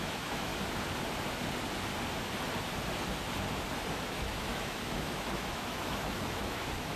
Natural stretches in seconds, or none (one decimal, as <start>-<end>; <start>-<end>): 0.5-3.9